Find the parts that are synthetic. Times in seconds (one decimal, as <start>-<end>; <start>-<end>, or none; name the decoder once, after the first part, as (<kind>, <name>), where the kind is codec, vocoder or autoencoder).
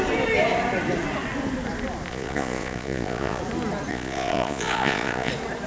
2.1-3.4 (vocoder, Vocos); 3.9-5.3